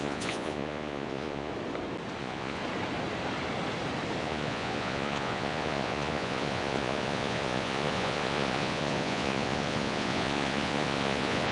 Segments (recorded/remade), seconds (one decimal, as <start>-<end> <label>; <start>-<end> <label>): 0.0-1.5 remade; 1.5-2.2 recorded; 2.2-2.6 remade; 2.6-4.2 recorded; 4.2-11.5 remade